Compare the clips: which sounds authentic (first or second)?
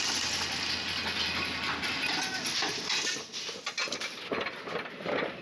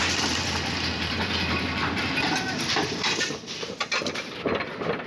first